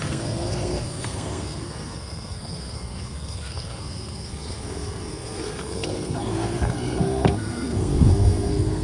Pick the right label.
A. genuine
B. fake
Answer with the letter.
B